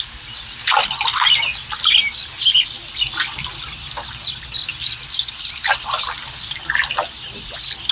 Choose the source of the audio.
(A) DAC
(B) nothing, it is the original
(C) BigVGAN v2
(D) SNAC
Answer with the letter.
B